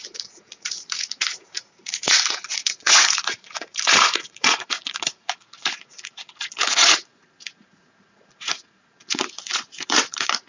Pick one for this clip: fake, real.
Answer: fake